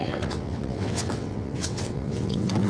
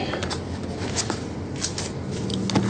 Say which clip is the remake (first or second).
first